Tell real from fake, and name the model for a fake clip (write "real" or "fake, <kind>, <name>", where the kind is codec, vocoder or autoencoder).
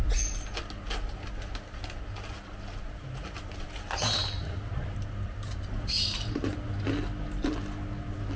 real